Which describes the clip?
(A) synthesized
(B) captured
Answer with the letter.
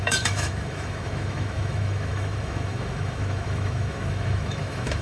A